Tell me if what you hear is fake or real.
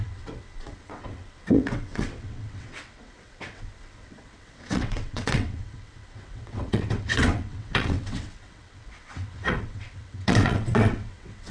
fake